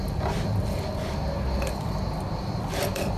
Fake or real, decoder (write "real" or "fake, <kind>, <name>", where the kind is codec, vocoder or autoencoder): real